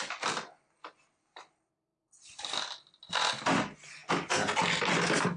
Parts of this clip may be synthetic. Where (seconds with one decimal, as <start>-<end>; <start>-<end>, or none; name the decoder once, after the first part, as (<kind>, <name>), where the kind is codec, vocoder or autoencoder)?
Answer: none